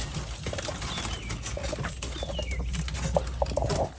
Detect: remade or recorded recorded